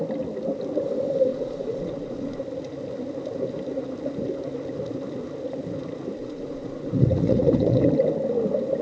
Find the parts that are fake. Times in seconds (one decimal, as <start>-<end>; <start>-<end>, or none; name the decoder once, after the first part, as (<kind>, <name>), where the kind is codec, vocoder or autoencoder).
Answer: 1.3-2.4 (vocoder, Vocos); 6.2-7.9